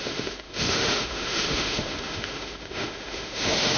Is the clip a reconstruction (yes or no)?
yes